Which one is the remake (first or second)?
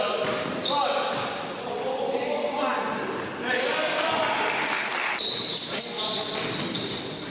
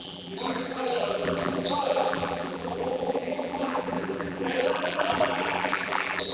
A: second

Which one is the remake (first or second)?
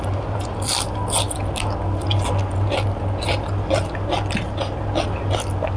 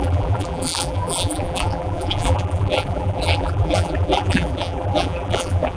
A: second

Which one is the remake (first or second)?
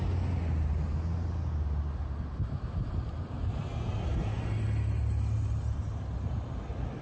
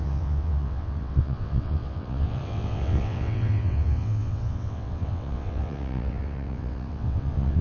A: second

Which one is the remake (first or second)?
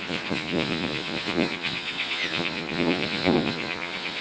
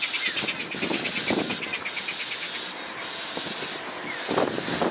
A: first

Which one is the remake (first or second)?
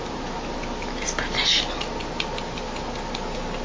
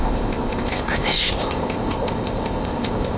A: second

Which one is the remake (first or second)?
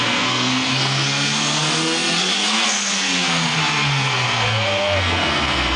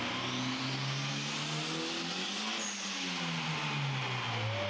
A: first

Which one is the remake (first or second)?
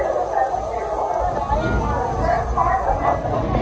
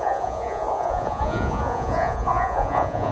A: second